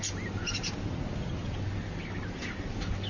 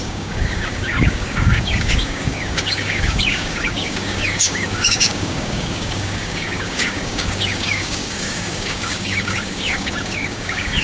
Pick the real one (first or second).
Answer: first